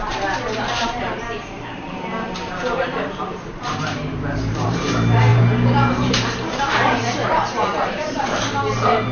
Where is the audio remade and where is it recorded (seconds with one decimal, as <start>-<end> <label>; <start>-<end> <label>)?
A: 0.0-5.3 remade; 5.3-5.9 recorded; 5.9-9.1 remade